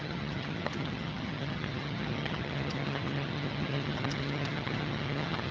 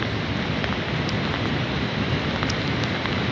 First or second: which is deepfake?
first